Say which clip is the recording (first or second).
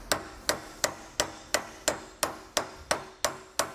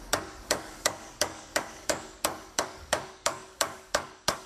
first